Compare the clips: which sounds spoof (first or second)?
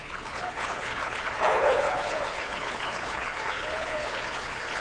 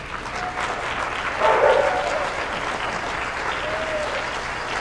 first